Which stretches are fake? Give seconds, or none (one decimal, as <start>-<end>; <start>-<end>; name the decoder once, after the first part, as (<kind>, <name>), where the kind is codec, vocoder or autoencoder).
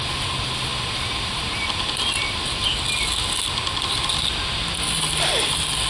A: none